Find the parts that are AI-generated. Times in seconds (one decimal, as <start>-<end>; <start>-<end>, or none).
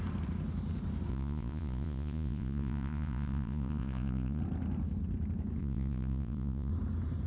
1.1-4.4; 5.6-6.7